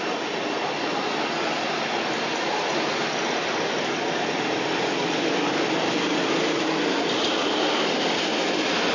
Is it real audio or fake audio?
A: fake